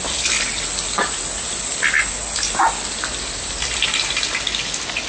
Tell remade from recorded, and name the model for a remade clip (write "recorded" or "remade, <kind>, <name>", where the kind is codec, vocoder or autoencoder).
recorded